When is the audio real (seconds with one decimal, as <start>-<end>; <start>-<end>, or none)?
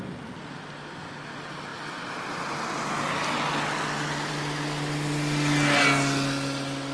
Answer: 0.0-6.9